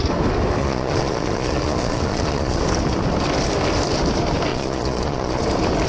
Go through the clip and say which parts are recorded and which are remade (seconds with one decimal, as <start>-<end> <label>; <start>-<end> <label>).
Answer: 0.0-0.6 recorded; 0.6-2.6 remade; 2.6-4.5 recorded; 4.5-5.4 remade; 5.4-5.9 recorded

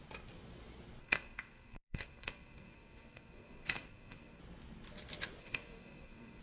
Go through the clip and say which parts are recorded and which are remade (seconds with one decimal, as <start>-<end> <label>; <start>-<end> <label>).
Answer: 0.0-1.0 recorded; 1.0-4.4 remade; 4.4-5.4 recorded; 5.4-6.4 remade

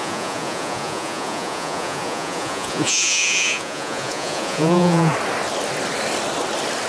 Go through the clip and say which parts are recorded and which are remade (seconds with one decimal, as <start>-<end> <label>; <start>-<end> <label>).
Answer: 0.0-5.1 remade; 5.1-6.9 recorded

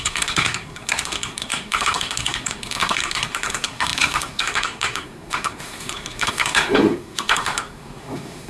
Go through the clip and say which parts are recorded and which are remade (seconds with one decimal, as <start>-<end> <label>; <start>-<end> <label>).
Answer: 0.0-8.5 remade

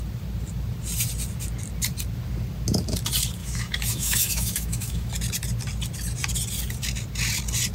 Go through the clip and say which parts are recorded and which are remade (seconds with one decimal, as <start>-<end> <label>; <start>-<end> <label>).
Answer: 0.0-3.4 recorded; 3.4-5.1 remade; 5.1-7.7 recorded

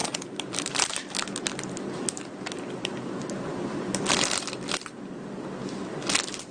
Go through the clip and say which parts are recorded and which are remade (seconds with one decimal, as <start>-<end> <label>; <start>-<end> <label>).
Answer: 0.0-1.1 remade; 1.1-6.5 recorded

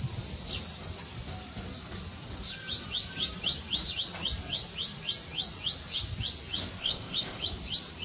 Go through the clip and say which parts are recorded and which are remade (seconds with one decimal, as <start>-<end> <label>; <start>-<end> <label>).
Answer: 0.0-6.8 recorded; 6.8-7.4 remade; 7.4-8.0 recorded